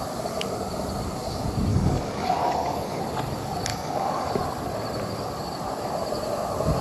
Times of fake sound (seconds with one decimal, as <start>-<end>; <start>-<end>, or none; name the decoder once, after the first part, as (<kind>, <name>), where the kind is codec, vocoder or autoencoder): 1.7-3.0 (codec, DAC); 3.7-4.3